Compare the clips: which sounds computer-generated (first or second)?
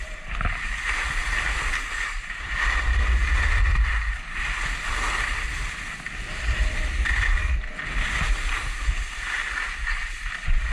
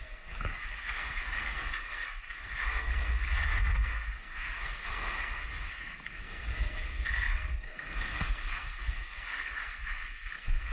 second